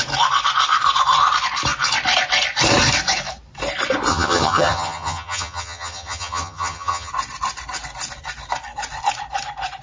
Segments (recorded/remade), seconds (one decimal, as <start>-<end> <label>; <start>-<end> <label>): 0.0-4.1 recorded; 4.1-7.1 remade; 7.1-9.8 recorded